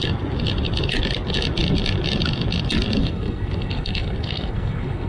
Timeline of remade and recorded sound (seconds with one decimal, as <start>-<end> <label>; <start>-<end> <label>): 0.0-3.0 recorded; 3.0-5.1 remade